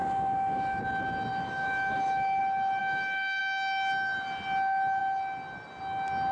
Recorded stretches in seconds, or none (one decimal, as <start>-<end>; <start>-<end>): 0.8-1.3; 2.4-2.8; 3.4-6.3